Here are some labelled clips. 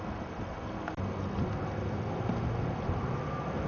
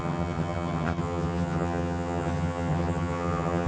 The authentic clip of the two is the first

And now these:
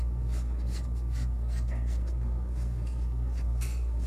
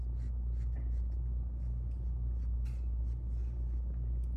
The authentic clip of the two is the second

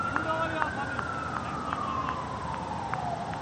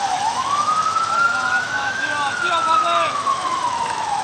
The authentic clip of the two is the first